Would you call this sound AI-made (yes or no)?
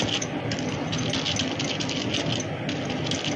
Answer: no